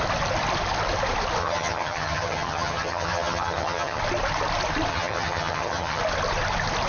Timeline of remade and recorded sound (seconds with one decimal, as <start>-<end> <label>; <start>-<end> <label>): 0.0-1.4 recorded; 1.4-4.0 remade; 4.0-4.9 recorded; 4.9-6.0 remade; 6.0-6.9 recorded